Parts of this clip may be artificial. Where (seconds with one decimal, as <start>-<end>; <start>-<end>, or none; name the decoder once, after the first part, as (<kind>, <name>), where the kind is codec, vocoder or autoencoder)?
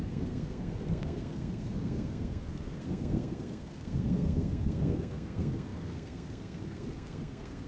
0.0-7.7 (codec, SNAC)